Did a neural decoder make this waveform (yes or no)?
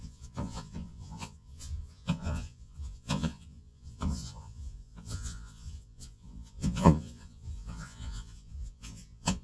yes